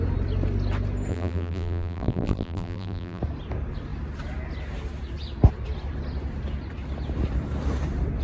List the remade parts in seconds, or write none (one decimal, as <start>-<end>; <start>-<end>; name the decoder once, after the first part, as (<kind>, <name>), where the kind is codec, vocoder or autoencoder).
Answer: 1.1-3.2 (vocoder, BigVGAN v2)